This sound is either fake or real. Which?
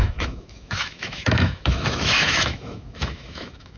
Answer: fake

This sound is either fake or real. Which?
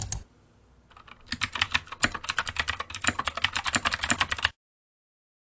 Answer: real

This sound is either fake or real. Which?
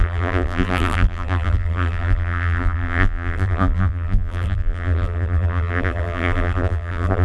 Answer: fake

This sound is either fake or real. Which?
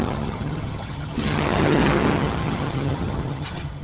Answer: fake